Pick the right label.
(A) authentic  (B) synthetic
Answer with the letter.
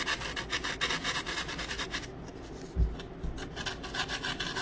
A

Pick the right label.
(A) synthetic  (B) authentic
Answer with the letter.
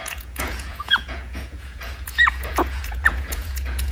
A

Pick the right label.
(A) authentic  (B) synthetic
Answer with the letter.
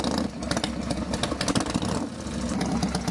A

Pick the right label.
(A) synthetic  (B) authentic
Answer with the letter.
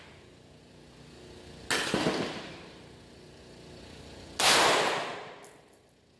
B